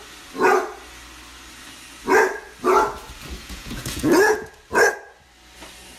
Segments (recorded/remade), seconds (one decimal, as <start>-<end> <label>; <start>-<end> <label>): 0.0-3.4 recorded; 3.4-4.5 remade; 4.5-6.0 recorded